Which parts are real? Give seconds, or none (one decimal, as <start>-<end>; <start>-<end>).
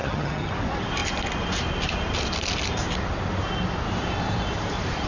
0.5-5.1